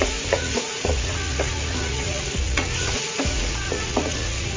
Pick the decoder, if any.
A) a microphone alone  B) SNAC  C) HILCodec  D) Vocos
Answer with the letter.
D